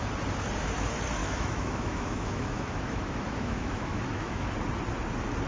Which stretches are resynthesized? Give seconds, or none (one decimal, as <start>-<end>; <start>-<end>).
1.2-4.5